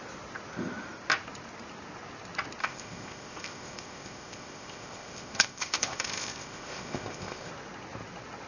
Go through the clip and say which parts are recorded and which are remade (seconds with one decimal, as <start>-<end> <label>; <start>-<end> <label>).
0.0-2.6 recorded; 2.6-7.5 remade; 7.5-8.5 recorded